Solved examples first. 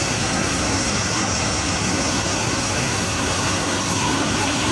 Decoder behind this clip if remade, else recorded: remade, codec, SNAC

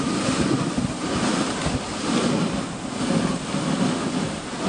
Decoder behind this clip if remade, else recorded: recorded